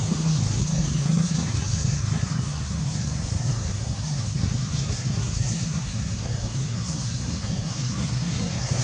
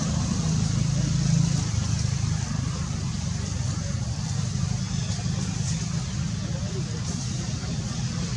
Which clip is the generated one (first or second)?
first